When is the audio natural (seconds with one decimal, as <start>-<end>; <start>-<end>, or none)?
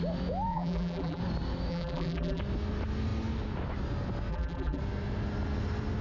0.0-0.5; 1.2-1.7; 2.4-4.3; 4.8-6.0